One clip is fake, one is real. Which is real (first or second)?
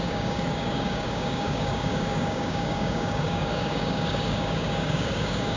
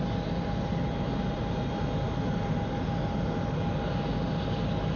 second